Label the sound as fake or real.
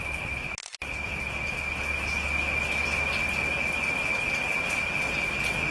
real